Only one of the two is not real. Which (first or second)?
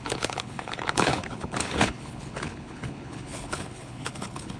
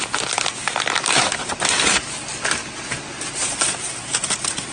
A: first